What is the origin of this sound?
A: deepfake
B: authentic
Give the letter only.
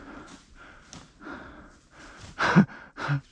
B